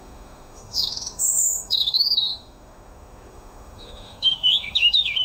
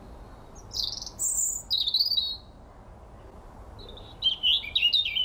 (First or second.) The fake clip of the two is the first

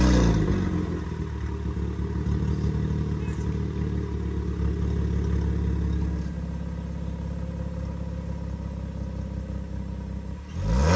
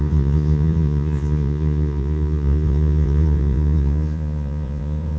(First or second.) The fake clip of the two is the second